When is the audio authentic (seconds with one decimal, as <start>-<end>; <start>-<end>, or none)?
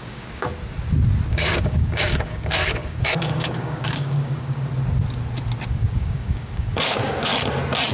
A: 0.5-1.3; 4.7-5.7; 7.3-7.9